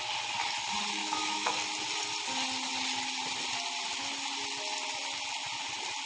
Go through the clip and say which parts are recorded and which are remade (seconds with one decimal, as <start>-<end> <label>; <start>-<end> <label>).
0.0-1.0 recorded; 1.0-1.5 remade; 1.5-6.1 recorded